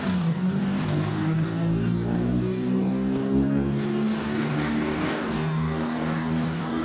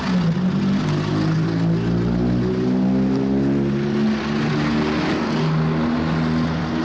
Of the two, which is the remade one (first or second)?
first